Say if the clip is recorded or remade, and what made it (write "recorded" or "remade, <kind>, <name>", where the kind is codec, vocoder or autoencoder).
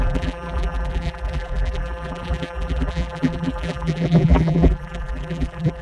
remade, vocoder, BigVGAN v2